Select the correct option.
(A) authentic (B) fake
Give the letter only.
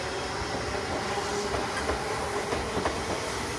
A